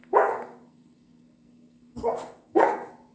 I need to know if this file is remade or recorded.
remade